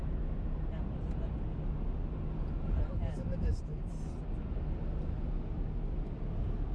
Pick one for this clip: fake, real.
real